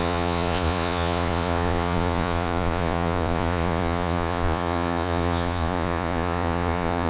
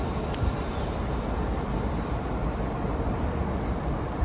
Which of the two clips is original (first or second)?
second